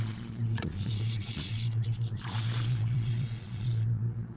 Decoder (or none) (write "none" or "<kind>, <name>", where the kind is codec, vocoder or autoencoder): vocoder, Vocos